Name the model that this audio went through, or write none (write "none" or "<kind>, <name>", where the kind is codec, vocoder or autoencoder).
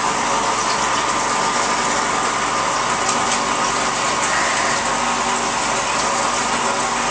none